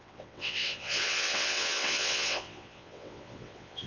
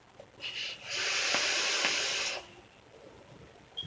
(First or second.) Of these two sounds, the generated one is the first